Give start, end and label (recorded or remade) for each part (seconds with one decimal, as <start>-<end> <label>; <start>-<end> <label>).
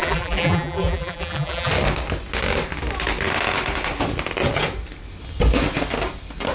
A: 0.0-1.7 remade; 1.7-6.5 recorded